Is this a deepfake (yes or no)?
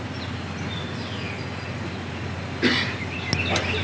no